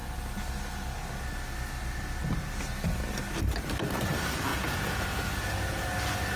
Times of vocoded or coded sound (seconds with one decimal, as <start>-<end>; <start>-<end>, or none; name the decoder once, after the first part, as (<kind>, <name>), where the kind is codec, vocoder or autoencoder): 4.5-5.9 (vocoder, Vocos)